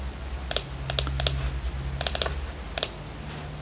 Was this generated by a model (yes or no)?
no